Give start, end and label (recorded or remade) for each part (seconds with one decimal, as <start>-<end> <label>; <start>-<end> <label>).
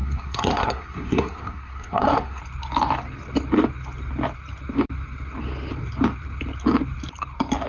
0.0-2.4 remade; 2.4-7.7 recorded